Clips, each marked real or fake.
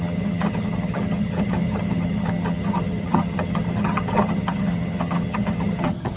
fake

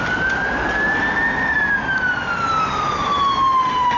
real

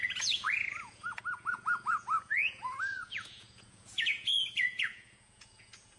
fake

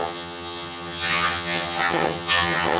fake